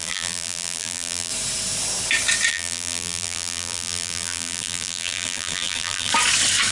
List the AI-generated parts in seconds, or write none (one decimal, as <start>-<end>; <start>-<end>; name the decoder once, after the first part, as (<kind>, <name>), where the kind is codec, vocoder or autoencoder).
0.0-1.3 (vocoder, BigVGAN v2); 2.5-6.1